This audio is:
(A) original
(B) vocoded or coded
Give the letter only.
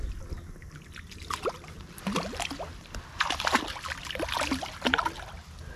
A